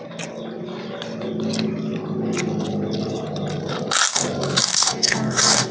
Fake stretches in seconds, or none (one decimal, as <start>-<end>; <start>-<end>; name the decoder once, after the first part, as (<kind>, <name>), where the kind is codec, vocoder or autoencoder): 4.6-5.7 (codec, DAC)